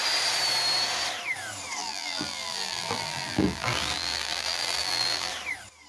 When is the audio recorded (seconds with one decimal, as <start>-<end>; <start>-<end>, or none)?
0.0-1.8; 5.3-5.9